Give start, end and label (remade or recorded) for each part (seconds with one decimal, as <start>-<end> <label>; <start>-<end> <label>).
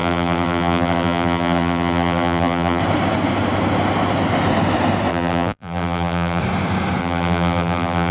0.0-2.8 remade; 2.8-5.1 recorded; 5.1-6.4 remade; 6.4-7.0 recorded; 7.0-8.1 remade